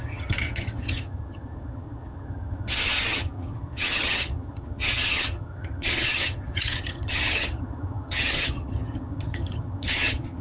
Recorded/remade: remade